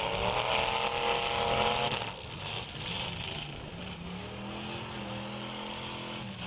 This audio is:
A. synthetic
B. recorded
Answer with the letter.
B